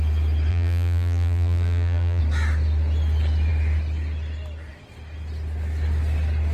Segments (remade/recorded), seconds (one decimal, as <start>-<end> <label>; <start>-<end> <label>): 0.0-0.5 recorded; 0.5-2.2 remade; 2.2-6.5 recorded